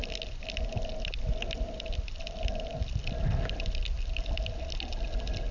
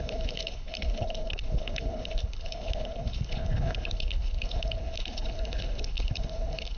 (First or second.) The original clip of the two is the first